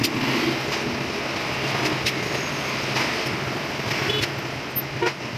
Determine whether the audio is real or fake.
real